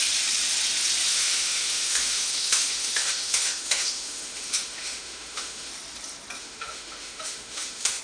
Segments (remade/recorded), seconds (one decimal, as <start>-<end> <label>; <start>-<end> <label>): 0.0-1.1 recorded; 1.1-5.7 remade; 5.7-6.4 recorded; 6.4-8.0 remade